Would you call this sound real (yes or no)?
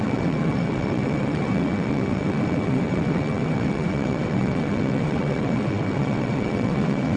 no